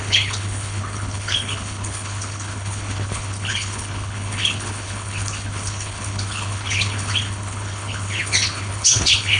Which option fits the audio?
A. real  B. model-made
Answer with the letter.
B